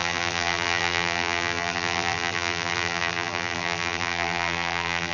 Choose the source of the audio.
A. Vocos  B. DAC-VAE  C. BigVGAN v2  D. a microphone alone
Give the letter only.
C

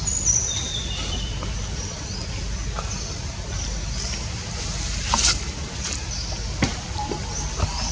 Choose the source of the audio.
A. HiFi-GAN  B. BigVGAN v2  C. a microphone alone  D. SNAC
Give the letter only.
B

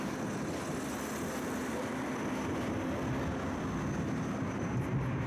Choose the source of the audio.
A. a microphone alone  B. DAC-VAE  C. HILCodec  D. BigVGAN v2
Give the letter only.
A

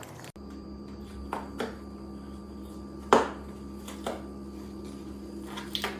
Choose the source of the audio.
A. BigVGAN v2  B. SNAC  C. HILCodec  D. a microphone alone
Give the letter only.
D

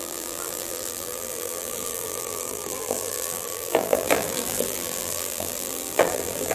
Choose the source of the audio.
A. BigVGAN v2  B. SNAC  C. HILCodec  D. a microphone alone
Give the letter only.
A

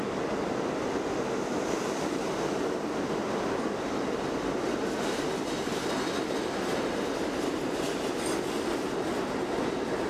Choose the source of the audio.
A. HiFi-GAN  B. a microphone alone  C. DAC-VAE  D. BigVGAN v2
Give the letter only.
B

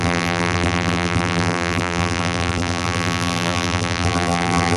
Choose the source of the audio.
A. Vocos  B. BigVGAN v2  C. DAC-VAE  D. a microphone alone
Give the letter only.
B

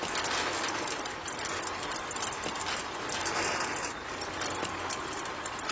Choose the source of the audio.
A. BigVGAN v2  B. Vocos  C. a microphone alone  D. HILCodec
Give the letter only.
C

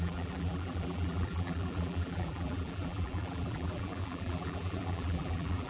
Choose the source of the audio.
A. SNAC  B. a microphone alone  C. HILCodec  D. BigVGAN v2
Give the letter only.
D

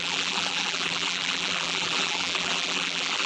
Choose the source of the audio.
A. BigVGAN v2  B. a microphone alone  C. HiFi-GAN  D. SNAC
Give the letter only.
A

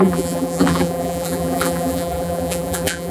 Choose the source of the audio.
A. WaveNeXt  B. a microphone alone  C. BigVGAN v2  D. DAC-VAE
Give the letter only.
C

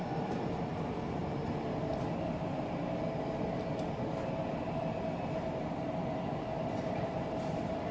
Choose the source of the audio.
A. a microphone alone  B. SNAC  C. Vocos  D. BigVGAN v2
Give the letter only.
A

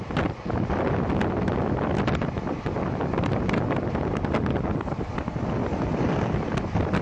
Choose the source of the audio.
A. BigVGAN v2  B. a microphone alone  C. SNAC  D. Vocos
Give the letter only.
B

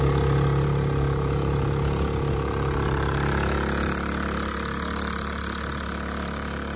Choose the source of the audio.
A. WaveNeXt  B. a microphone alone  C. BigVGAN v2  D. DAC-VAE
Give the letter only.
B